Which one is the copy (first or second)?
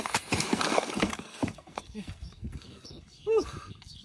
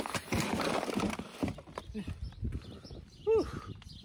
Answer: first